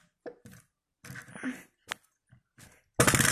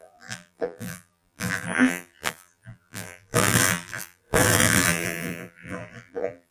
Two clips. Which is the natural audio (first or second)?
first